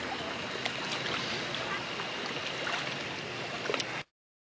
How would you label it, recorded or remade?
recorded